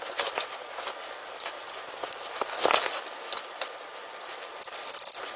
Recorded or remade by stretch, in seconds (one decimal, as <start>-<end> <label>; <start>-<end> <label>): 0.0-2.8 recorded; 2.8-4.5 remade; 4.5-5.4 recorded